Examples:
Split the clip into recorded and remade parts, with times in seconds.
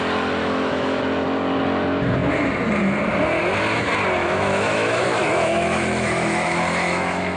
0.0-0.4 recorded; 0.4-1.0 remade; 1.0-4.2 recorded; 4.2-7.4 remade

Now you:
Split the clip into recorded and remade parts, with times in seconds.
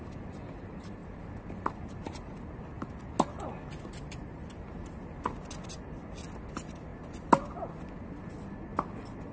0.0-9.3 recorded